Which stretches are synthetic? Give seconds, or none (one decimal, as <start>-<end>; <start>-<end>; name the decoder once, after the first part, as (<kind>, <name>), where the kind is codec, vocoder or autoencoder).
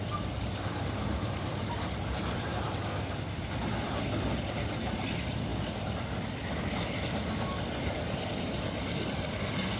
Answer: none